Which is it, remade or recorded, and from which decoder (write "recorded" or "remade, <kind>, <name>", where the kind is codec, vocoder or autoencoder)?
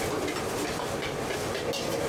recorded